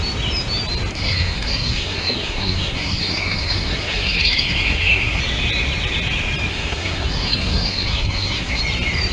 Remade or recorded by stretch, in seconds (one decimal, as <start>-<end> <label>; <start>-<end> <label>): 0.0-0.9 recorded; 0.9-5.2 remade; 5.2-6.5 recorded; 6.5-8.6 remade; 8.6-9.1 recorded